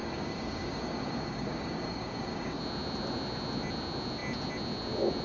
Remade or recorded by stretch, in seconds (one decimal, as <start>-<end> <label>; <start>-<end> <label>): 0.0-2.6 remade; 2.6-5.2 recorded